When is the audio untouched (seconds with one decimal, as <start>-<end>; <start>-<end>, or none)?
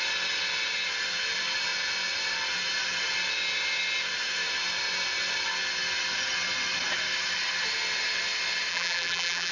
0.0-8.7